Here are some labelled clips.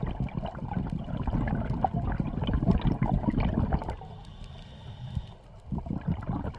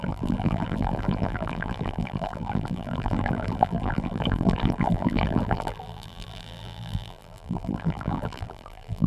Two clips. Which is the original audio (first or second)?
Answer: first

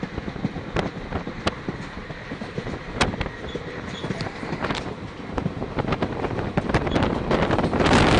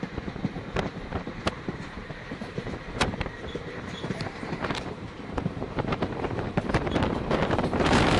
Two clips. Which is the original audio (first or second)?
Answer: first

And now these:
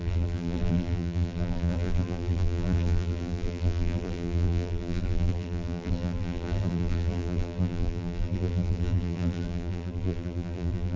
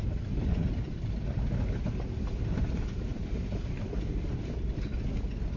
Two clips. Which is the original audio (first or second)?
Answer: second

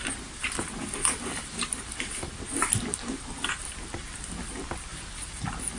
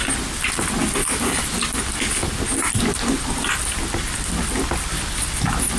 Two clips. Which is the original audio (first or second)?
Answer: second